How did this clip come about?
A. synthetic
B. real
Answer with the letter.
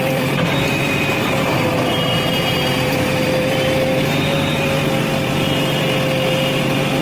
A